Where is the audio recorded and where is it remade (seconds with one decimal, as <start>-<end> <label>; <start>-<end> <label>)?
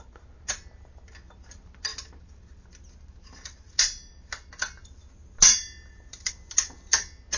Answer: 0.0-7.4 recorded